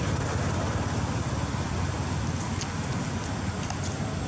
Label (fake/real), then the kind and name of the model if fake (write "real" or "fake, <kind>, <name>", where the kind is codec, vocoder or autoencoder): real